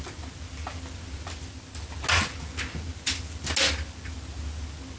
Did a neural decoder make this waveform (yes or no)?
no